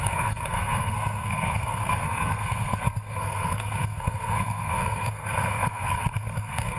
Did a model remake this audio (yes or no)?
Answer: yes